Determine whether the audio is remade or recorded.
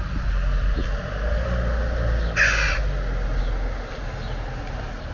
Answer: recorded